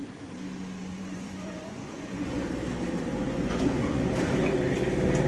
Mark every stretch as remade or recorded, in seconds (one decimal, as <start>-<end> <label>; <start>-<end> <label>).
0.0-0.9 recorded; 0.9-2.5 remade; 2.5-3.1 recorded; 3.1-4.0 remade; 4.0-5.3 recorded